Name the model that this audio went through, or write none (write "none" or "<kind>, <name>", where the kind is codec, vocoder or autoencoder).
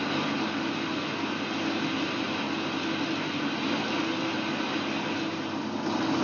none